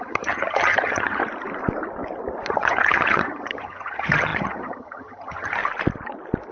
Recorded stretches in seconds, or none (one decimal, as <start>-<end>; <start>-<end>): 1.2-2.5; 5.6-6.5